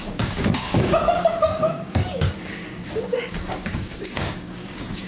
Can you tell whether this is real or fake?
fake